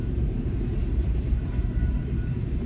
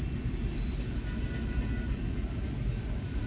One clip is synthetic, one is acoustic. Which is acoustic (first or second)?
second